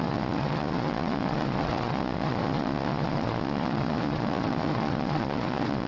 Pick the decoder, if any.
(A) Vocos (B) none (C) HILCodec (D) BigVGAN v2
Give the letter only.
A